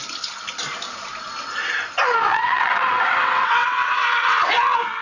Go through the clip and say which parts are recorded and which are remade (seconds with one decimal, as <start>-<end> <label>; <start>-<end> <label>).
0.0-2.3 recorded; 2.3-4.5 remade; 4.5-5.0 recorded